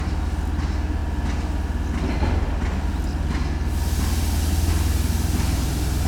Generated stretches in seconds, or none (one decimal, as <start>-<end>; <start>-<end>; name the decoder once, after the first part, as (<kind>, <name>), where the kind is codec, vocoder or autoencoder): none